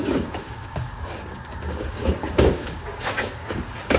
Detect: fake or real fake